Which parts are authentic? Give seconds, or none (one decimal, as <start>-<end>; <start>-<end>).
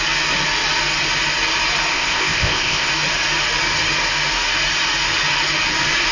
0.0-1.9; 2.9-6.1